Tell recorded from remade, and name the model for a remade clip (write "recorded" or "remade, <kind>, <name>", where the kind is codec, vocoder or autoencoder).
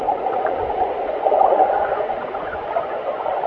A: remade, vocoder, Vocos